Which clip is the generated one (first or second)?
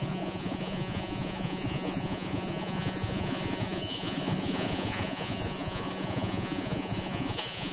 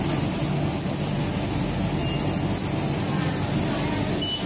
first